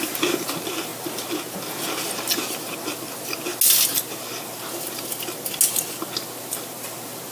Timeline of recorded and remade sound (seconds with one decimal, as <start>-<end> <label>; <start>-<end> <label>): 0.0-7.3 recorded